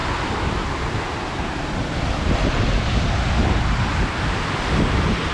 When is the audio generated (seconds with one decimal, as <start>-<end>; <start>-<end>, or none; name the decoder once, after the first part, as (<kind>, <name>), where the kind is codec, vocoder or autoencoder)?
0.0-3.0 (vocoder, BigVGAN v2)

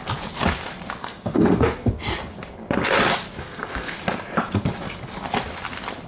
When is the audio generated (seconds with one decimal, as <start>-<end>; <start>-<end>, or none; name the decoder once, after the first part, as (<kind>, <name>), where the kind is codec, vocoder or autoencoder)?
1.0-1.9 (codec, SNAC); 3.4-4.0